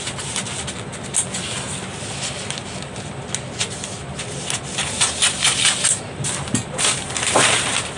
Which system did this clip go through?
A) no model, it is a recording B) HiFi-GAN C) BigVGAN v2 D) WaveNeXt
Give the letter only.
A